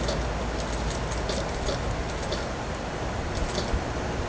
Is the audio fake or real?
real